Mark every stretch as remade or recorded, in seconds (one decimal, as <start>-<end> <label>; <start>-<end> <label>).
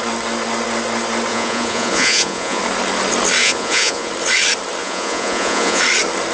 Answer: 0.0-1.3 recorded; 1.3-2.6 remade; 2.6-3.4 recorded; 3.4-4.1 remade; 4.1-4.8 recorded; 4.8-5.8 remade; 5.8-6.3 recorded